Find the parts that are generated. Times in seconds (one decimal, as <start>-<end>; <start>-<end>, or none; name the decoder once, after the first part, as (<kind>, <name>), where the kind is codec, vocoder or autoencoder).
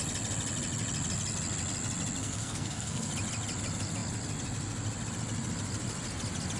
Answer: 2.2-3.1 (codec, SNAC)